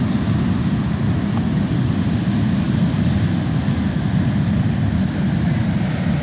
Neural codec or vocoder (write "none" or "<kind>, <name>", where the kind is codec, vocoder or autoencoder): none